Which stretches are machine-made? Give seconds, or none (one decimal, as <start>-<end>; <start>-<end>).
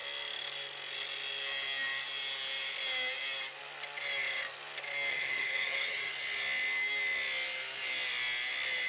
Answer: 5.1-6.1